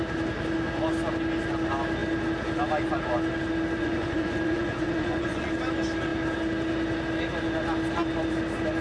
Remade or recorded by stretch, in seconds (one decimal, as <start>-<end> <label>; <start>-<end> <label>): 0.0-3.8 recorded; 3.8-5.5 remade; 5.5-8.8 recorded